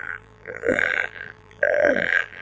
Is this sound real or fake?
fake